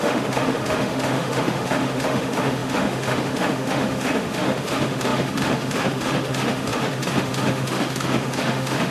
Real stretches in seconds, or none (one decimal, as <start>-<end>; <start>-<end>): none